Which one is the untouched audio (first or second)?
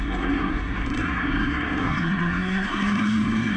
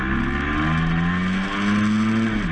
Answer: second